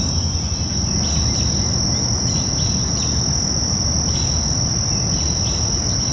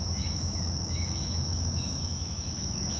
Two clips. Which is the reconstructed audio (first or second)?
second